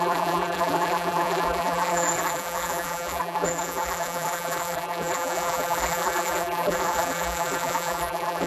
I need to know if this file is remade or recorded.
remade